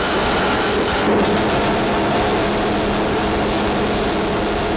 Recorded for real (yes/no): yes